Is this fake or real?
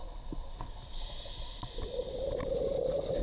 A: real